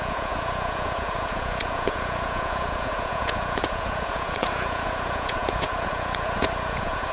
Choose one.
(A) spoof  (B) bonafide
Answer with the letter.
A